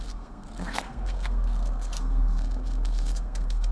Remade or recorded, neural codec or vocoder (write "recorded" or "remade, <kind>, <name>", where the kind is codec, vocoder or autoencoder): remade, codec, SNAC